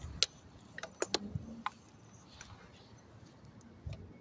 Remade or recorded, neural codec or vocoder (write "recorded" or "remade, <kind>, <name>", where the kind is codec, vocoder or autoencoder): recorded